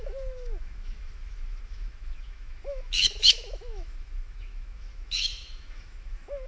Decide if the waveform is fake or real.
fake